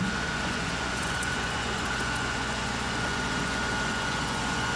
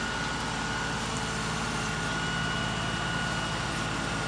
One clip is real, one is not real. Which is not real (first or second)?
first